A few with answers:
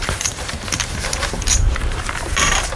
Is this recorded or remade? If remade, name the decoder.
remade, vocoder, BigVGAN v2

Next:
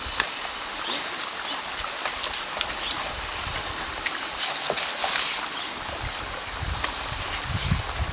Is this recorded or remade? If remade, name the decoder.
recorded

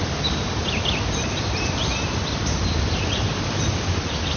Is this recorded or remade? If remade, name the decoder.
recorded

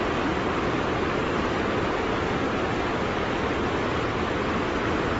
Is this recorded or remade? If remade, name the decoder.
recorded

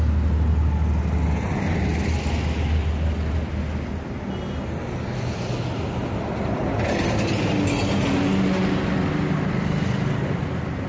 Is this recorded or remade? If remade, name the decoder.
recorded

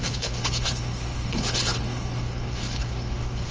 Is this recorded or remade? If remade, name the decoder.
remade, codec, HILCodec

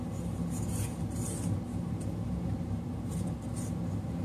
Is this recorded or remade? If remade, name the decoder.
remade, vocoder, BigVGAN v2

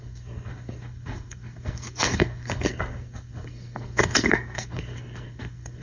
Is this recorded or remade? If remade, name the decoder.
remade, codec, SNAC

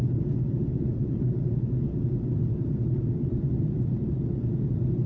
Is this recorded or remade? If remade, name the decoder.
recorded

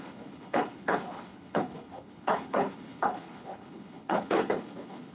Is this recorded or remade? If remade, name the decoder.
remade, codec, HILCodec